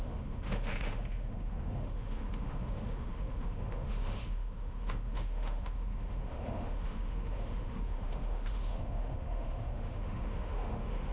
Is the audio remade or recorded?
remade